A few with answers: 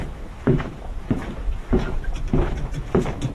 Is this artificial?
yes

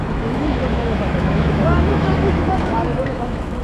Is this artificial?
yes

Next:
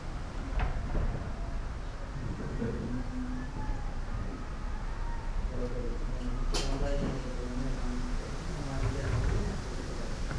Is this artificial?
no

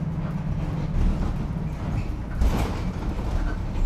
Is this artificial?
no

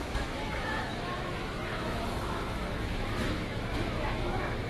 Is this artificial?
yes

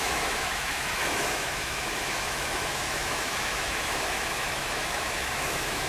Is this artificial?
yes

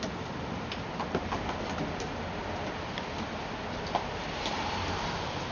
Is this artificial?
no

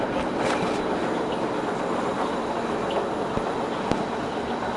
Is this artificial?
no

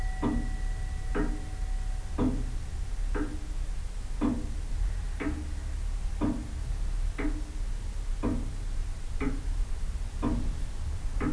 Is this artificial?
no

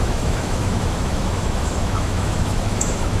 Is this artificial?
yes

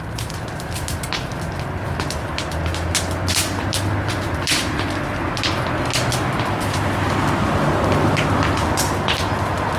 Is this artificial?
no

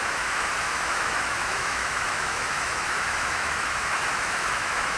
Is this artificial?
yes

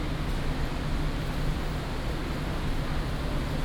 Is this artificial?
no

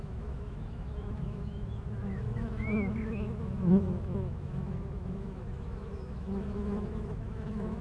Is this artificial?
yes